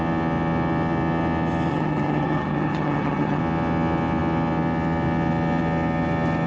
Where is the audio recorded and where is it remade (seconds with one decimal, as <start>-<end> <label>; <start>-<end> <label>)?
0.0-1.7 recorded; 1.7-3.4 remade; 3.4-6.5 recorded